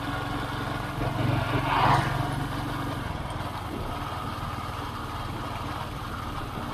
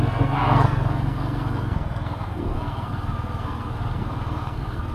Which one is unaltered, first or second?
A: first